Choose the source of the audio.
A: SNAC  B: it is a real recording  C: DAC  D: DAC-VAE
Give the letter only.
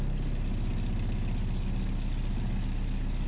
B